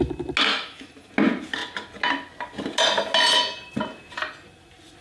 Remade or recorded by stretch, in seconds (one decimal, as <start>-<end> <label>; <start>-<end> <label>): 0.0-0.5 recorded; 0.5-1.1 remade; 1.1-5.0 recorded